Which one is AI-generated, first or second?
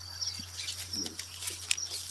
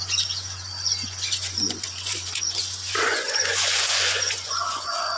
second